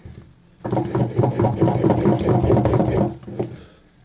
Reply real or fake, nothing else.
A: real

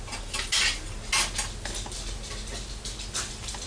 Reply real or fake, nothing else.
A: real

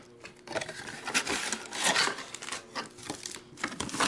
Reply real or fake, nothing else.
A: real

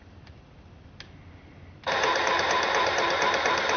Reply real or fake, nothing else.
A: real